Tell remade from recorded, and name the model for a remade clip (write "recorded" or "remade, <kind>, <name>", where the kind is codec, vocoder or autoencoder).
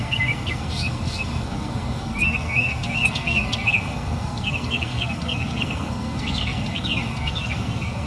remade, codec, SNAC